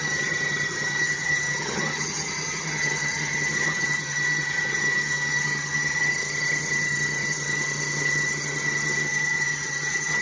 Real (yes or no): no